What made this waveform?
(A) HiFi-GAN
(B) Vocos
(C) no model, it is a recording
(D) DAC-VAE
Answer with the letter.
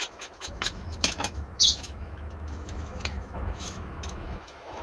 D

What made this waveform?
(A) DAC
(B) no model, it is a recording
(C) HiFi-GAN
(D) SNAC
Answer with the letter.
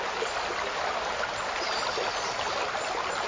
B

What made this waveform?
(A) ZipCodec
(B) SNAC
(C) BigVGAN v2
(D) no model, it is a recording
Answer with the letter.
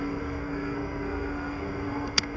B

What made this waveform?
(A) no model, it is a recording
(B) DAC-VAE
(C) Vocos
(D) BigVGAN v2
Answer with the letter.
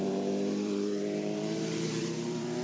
D